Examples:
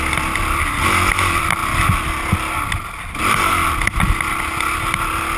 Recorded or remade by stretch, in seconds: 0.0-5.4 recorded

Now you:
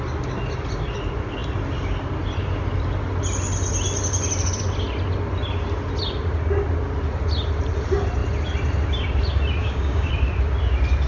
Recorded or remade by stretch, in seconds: 0.0-9.6 recorded; 9.6-10.1 remade; 10.1-11.1 recorded

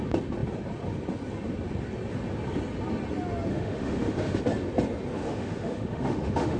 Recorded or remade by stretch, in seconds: 0.0-3.5 recorded; 3.5-4.4 remade; 4.4-5.2 recorded; 5.2-6.6 remade

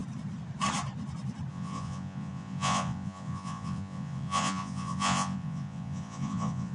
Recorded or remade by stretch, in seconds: 0.0-1.5 recorded; 1.5-6.7 remade

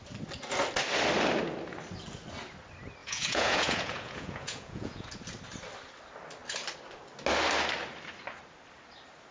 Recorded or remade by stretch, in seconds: 0.0-3.0 recorded; 3.0-5.1 remade; 5.1-9.3 recorded

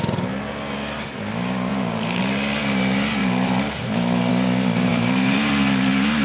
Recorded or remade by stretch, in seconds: 0.0-1.7 recorded; 1.7-2.2 remade; 2.2-3.2 recorded; 3.2-4.3 remade; 4.3-4.9 recorded; 4.9-5.5 remade; 5.5-6.2 recorded

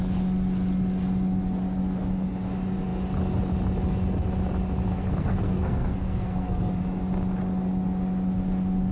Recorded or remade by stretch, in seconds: 0.0-4.9 recorded; 4.9-6.7 remade; 6.7-8.9 recorded